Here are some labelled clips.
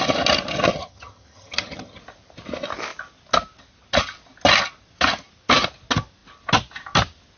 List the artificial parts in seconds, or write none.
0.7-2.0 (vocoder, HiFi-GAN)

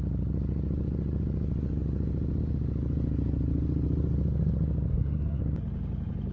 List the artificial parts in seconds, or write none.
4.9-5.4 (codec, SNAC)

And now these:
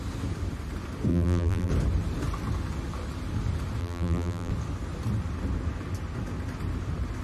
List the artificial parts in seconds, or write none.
1.1-1.7 (vocoder, BigVGAN v2); 3.8-4.5